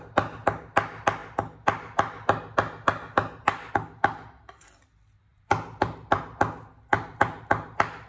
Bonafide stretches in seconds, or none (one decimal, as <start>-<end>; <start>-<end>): 0.0-5.3; 6.2-6.9; 7.5-8.1